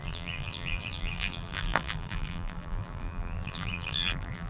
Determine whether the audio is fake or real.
fake